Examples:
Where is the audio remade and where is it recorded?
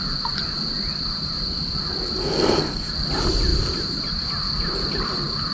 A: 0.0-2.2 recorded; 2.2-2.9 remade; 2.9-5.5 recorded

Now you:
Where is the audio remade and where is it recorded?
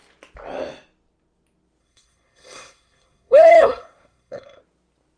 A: 0.0-1.8 recorded; 1.8-4.6 remade; 4.6-5.2 recorded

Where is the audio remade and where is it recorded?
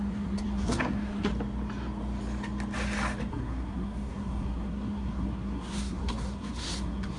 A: 0.0-1.3 remade; 1.3-3.3 recorded; 3.3-7.2 remade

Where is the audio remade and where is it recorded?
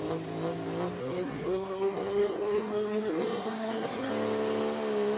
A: 0.0-1.0 recorded; 1.0-4.1 remade; 4.1-5.2 recorded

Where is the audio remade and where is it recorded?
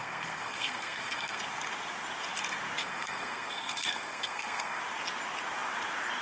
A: 0.0-1.4 remade; 1.4-2.8 recorded; 2.8-4.8 remade; 4.8-6.2 recorded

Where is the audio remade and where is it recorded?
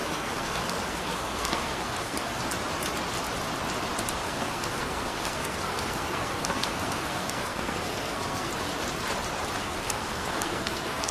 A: 0.0-2.4 remade; 2.4-4.2 recorded; 4.2-8.5 remade; 8.5-9.6 recorded; 9.6-11.1 remade